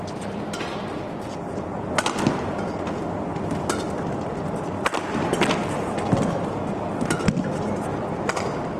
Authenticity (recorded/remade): recorded